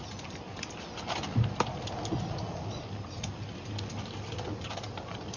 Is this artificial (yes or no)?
no